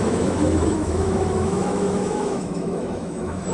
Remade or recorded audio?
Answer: remade